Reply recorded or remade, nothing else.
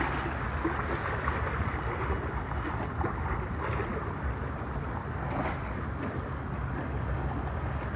recorded